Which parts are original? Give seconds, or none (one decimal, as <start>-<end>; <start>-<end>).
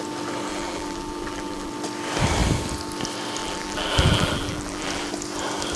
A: 0.0-0.5; 1.7-3.4; 5.1-5.8